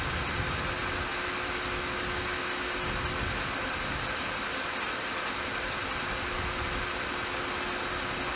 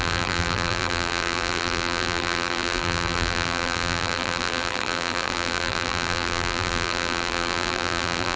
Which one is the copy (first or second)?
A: second